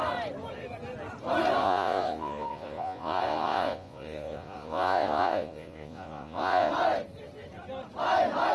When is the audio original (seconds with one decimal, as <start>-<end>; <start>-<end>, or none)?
0.0-1.6; 6.7-8.5